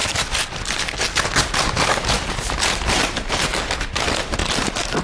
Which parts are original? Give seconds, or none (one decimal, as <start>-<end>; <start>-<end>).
0.0-2.9

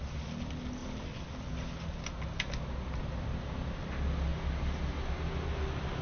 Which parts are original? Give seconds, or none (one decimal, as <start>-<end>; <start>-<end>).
0.0-6.0